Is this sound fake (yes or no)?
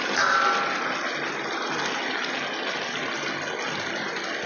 no